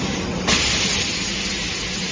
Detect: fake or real real